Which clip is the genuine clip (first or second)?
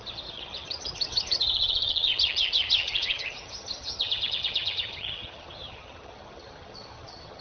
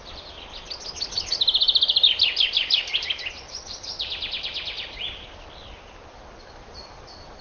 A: second